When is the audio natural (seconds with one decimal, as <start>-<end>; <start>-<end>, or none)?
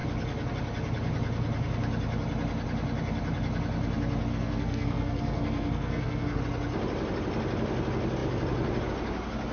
0.0-4.3; 6.4-9.5